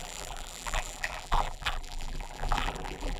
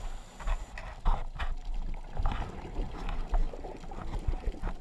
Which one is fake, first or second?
first